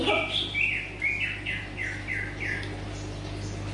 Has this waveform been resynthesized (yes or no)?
no